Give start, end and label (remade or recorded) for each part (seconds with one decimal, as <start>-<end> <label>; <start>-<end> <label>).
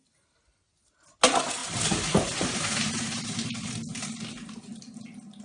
0.0-1.6 recorded; 1.6-4.8 remade; 4.8-5.4 recorded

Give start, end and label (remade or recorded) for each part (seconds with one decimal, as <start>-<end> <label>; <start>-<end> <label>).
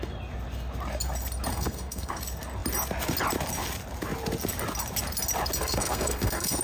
0.0-1.5 recorded; 1.5-2.2 remade; 2.2-5.6 recorded; 5.6-6.6 remade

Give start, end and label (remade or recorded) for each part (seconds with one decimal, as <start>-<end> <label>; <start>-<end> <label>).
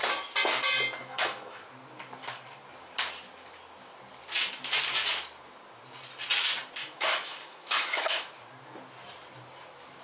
0.0-1.0 recorded; 1.0-1.6 remade; 1.6-6.8 recorded; 6.8-8.3 remade; 8.3-10.0 recorded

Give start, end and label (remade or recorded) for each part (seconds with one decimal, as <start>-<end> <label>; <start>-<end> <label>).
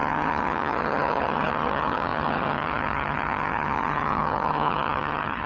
0.0-5.5 remade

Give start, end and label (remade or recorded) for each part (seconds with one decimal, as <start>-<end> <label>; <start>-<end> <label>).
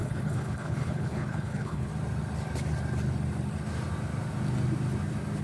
0.0-1.9 remade; 1.9-5.4 recorded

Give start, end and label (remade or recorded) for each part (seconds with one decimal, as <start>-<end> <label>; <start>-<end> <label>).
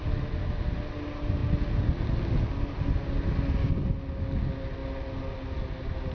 0.0-6.1 recorded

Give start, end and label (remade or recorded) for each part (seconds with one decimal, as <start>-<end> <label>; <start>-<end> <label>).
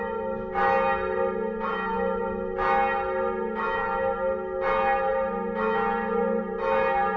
0.0-7.2 recorded